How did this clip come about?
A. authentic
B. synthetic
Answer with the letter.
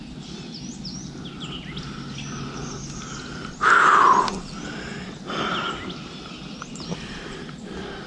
A